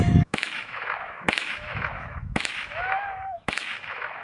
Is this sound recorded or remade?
remade